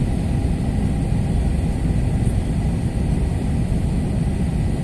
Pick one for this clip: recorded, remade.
recorded